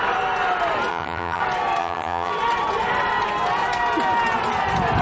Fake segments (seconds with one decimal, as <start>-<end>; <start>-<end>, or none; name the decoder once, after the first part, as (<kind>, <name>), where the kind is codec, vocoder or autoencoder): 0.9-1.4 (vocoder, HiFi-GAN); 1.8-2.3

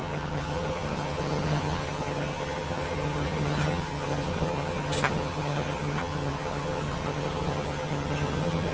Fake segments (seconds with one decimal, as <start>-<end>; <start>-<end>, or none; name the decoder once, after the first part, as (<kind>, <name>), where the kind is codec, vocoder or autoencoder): 0.0-8.7 (vocoder, HiFi-GAN)

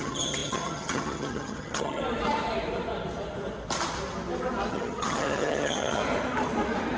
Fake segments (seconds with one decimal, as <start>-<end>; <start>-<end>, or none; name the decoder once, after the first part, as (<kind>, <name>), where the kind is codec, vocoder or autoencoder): 0.0-2.0 (vocoder, HiFi-GAN); 4.7-6.0

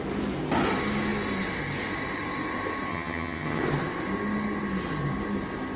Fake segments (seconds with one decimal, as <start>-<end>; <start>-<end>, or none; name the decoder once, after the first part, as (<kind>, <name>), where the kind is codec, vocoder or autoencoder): 2.9-3.6 (vocoder, HiFi-GAN)